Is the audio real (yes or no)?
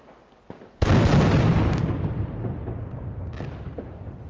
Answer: yes